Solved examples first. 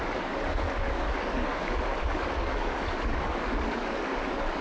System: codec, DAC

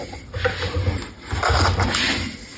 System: none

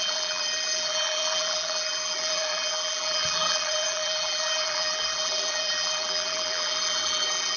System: vocoder, BigVGAN v2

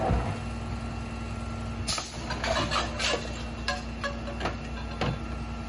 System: none